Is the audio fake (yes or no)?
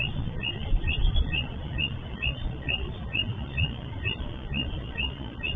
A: yes